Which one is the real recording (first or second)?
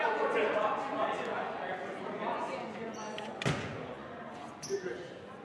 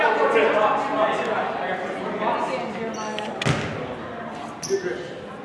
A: second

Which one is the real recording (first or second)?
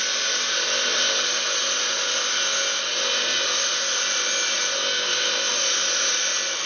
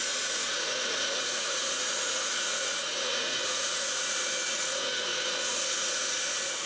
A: first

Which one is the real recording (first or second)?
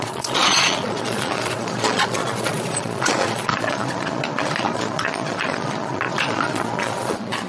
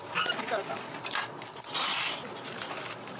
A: second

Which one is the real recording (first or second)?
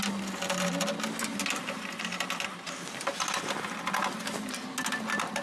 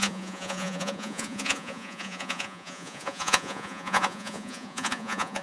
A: first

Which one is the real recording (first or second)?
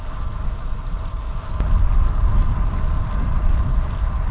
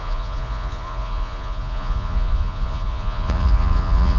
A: first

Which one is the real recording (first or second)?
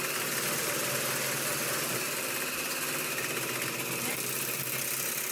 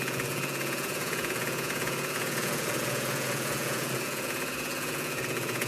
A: first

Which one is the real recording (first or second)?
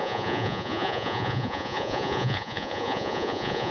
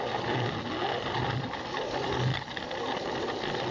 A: second